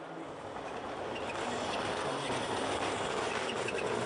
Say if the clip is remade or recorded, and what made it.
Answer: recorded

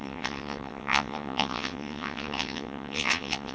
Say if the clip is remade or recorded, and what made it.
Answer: remade, vocoder, WaveNeXt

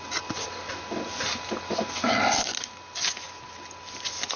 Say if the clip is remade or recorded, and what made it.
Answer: recorded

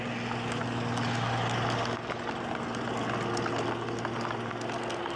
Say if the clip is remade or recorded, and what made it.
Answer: recorded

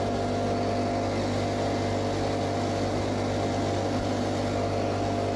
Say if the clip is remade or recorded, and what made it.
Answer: recorded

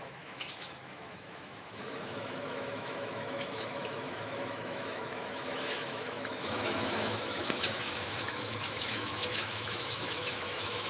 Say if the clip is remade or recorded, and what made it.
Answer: remade, autoencoder, DAC-VAE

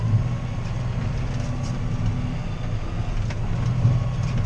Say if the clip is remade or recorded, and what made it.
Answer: recorded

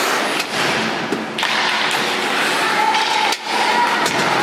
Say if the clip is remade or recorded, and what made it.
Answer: recorded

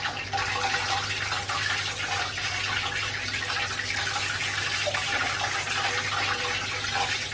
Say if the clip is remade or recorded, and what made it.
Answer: recorded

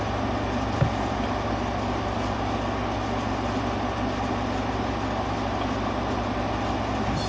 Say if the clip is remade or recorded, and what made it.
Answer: recorded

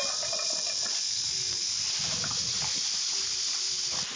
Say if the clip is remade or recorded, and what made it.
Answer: recorded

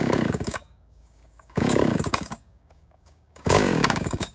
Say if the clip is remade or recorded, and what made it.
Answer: remade, codec, DAC